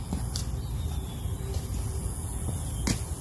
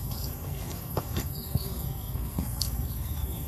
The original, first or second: first